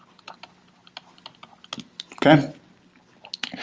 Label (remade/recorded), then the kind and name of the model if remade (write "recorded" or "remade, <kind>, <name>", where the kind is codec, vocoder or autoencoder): recorded